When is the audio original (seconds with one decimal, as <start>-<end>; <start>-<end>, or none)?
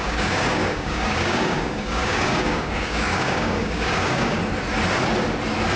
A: 4.4-5.8